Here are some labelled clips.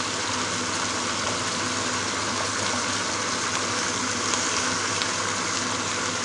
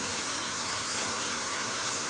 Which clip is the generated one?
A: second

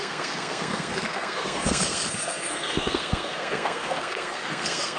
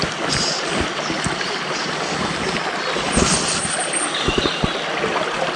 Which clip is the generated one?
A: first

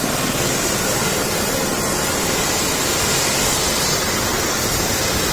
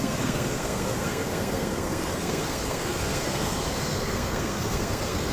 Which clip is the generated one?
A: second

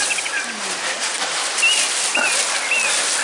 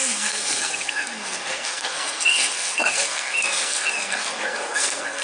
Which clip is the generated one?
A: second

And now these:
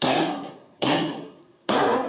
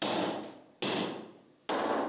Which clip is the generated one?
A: first